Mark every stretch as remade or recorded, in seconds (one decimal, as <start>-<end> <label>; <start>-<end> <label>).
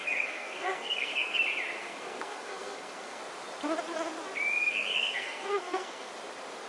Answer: 0.0-1.4 remade; 1.4-1.8 recorded; 1.8-3.2 remade; 3.2-4.6 recorded; 4.6-6.1 remade; 6.1-6.7 recorded